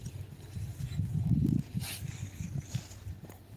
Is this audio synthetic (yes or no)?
no